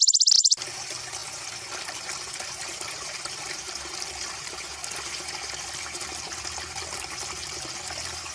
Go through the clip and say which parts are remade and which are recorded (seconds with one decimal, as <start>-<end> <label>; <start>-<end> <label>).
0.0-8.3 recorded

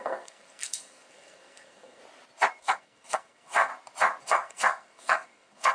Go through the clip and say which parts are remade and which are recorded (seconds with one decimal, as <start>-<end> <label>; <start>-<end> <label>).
0.0-2.0 remade; 2.0-2.6 recorded; 2.6-3.7 remade; 3.7-4.2 recorded; 4.2-5.7 remade

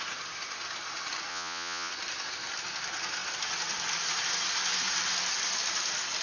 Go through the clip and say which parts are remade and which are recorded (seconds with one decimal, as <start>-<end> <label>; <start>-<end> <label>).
0.0-1.3 recorded; 1.3-1.9 remade; 1.9-6.2 recorded

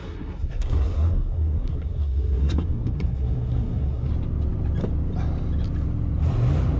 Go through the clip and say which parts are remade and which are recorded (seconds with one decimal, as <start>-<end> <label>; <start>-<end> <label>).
0.0-4.1 remade; 4.1-6.8 recorded

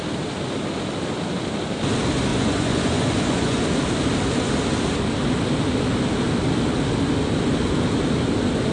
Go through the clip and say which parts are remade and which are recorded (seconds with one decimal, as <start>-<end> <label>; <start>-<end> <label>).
0.0-2.3 recorded; 2.3-3.6 remade; 3.6-8.7 recorded

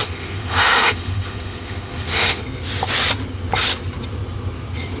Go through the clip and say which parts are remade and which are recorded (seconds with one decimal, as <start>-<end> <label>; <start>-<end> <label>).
0.0-2.4 remade; 2.4-5.0 recorded